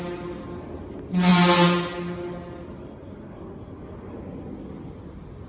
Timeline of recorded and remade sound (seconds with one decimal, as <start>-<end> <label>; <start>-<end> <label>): 0.0-5.5 recorded